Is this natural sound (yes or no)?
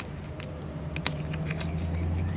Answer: yes